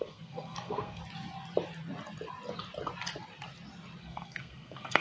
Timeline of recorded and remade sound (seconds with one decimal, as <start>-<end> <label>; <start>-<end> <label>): 0.0-1.0 remade; 1.0-4.0 recorded; 4.0-5.0 remade

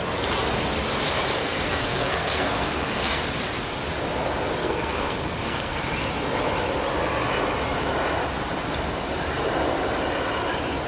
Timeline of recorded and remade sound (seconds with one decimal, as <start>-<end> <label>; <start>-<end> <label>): 0.0-1.4 recorded; 1.4-3.2 remade; 3.2-4.6 recorded; 4.6-5.8 remade; 5.8-10.9 recorded

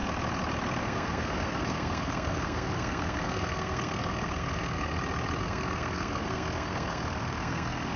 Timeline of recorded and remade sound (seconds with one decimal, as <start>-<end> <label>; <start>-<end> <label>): 0.0-0.8 recorded; 0.8-4.9 remade; 4.9-5.4 recorded; 5.4-8.0 remade

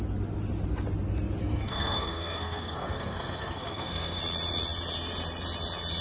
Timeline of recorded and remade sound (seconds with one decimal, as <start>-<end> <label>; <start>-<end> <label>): 0.0-1.4 recorded; 1.4-4.2 remade; 4.2-6.0 recorded

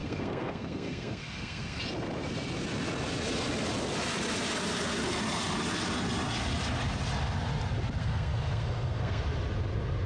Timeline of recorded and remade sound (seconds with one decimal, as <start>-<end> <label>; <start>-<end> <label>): 0.0-1.8 remade; 1.8-8.0 recorded; 8.0-9.2 remade; 9.2-10.1 recorded

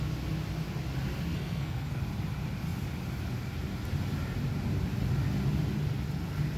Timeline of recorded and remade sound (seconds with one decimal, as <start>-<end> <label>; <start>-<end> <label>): 0.0-1.3 recorded; 1.3-2.0 remade; 2.0-6.6 recorded